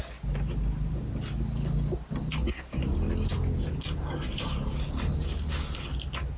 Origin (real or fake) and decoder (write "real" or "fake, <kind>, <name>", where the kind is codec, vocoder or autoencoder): real